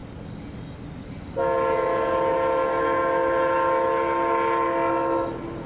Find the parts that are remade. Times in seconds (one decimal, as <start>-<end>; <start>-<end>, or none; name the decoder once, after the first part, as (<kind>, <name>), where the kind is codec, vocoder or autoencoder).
none